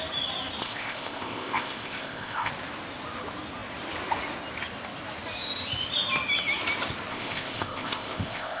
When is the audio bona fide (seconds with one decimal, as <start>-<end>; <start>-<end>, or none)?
0.0-0.6; 2.5-7.1